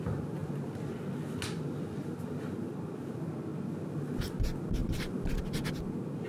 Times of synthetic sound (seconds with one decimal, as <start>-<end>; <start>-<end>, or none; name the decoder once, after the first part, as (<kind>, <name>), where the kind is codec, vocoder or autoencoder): 4.8-5.3 (vocoder, BigVGAN v2)